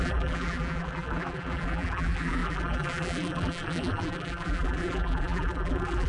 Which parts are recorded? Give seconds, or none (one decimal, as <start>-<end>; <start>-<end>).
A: none

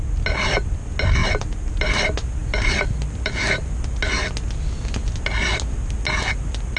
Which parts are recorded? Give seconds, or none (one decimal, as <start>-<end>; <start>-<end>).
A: 0.0-1.2; 1.9-2.4; 4.0-6.8